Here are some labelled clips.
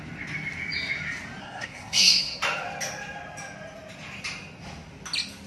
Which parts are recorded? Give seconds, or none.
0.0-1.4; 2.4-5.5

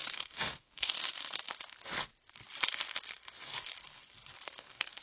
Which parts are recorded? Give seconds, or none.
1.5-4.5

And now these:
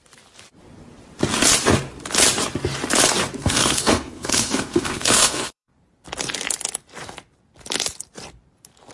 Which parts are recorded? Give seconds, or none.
0.0-3.4; 5.7-8.9

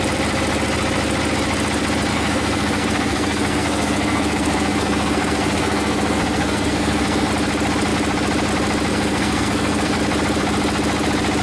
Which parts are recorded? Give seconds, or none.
0.0-2.1; 7.3-8.9; 10.0-11.4

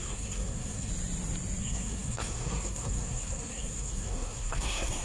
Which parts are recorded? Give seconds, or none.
0.9-1.6

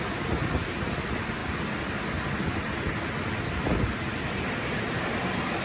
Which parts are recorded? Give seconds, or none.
0.0-5.6

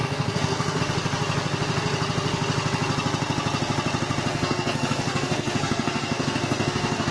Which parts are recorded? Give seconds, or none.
0.8-4.3